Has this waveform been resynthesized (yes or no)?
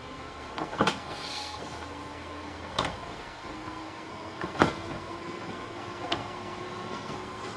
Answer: yes